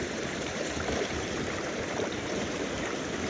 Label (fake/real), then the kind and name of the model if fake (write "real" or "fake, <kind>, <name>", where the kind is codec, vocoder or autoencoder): fake, vocoder, BigVGAN v2